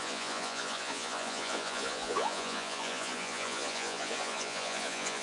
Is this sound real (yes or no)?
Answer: no